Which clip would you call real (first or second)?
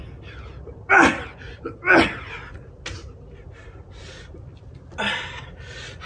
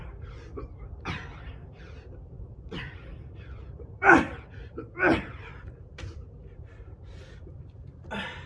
first